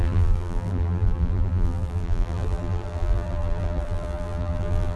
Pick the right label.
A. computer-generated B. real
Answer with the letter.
A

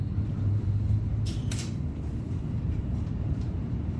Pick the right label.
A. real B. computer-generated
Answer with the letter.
B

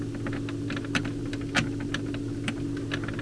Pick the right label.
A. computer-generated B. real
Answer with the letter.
B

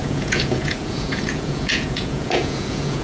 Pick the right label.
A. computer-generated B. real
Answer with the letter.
A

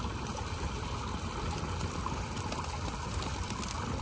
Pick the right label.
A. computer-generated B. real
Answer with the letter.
B